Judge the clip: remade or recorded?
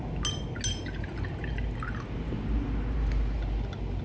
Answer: recorded